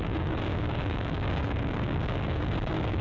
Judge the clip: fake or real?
fake